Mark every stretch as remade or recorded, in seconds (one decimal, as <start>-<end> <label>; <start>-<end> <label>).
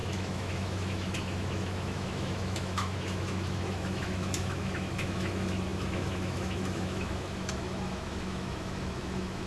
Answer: 0.0-9.5 remade